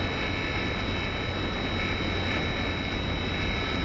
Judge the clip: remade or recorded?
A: recorded